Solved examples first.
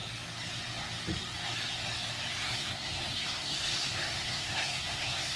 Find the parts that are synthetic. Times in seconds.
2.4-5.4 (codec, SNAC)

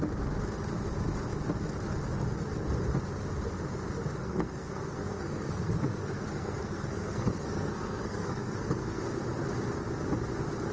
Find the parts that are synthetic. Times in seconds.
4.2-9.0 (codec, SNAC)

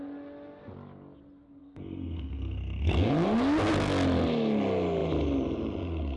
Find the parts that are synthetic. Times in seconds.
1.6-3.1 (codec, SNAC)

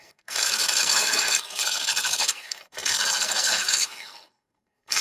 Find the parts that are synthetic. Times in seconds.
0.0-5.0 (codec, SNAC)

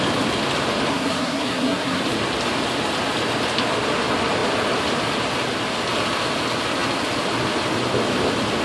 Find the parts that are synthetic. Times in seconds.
0.9-2.0 (codec, SNAC)